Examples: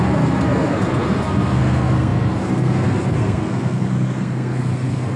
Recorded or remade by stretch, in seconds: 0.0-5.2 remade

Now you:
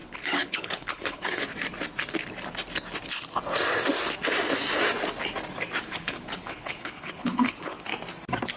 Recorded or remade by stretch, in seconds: 0.0-1.5 remade; 1.5-5.8 recorded; 5.8-7.9 remade; 7.9-8.6 recorded

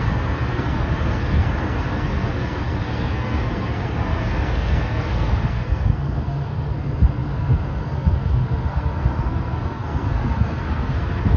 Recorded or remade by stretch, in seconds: 0.0-11.4 remade

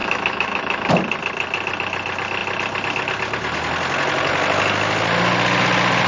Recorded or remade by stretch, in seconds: 0.0-0.9 remade; 0.9-6.1 recorded

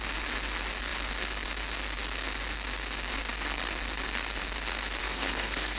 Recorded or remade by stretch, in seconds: 0.0-5.0 recorded; 5.0-5.8 remade

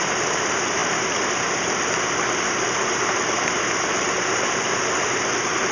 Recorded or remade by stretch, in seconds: 0.0-5.7 recorded

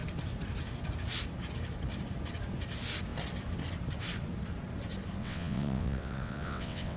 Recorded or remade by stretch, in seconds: 0.0-5.2 recorded; 5.2-7.0 remade

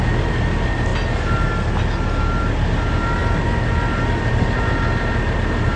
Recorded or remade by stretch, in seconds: 0.0-5.8 recorded